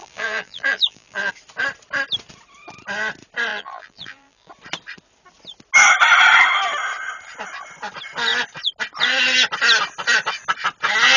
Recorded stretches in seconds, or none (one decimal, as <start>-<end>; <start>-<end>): 1.3-3.5; 4.5-11.2